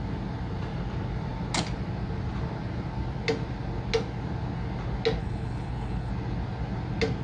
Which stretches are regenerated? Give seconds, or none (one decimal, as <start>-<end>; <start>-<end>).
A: 5.2-6.1